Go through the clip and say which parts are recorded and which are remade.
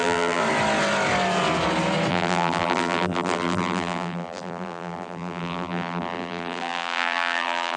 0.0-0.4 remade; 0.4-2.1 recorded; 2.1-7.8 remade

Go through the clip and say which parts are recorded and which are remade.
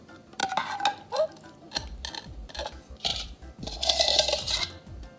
0.0-0.4 remade; 0.4-2.5 recorded; 2.5-5.2 remade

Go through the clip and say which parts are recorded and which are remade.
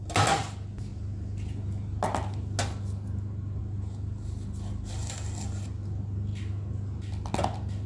0.0-7.9 recorded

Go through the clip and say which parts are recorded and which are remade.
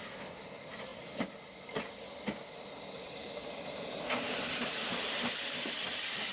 0.0-6.3 recorded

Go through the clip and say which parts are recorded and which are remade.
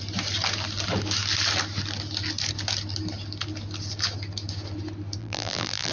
0.0-5.2 recorded; 5.2-5.9 remade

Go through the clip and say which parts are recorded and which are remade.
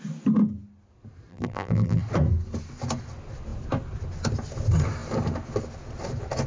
0.0-1.3 recorded; 1.3-2.0 remade; 2.0-6.5 recorded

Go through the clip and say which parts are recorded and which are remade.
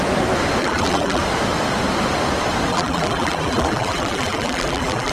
0.0-0.6 recorded; 0.6-1.2 remade; 1.2-2.7 recorded; 2.7-5.1 remade